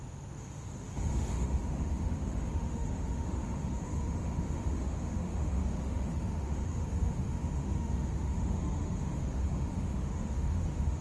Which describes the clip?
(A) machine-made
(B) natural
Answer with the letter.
A